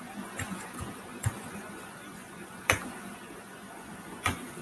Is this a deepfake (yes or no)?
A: yes